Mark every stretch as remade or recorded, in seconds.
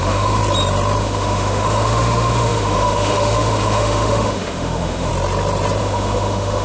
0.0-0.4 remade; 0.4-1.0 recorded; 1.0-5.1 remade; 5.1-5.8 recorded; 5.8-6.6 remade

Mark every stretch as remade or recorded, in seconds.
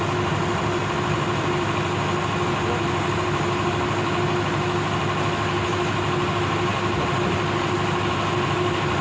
0.0-9.0 recorded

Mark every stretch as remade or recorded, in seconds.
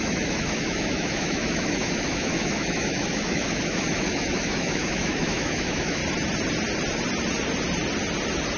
0.0-6.0 remade; 6.0-8.6 recorded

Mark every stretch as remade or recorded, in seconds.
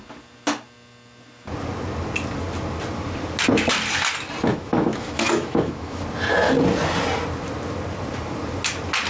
0.0-4.5 recorded; 4.5-6.0 remade; 6.0-9.1 recorded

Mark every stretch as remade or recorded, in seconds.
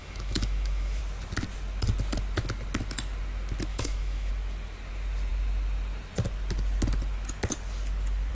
0.0-1.0 remade; 1.0-3.7 recorded; 3.7-4.3 remade; 4.3-8.3 recorded